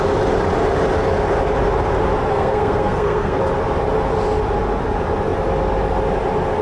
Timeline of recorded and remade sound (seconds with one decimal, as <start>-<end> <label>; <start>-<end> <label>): 0.0-2.3 recorded; 2.3-3.4 remade; 3.4-6.6 recorded

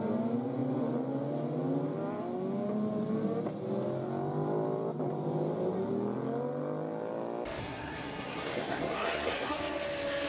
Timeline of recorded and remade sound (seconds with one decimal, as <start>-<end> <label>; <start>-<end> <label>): 0.0-7.6 recorded; 7.6-9.6 remade; 9.6-10.3 recorded

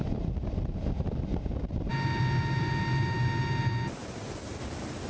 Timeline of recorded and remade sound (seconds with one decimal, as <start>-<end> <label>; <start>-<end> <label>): 0.0-5.1 recorded

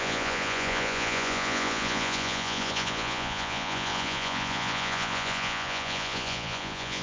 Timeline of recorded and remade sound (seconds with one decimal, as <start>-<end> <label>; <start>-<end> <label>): 0.0-7.0 remade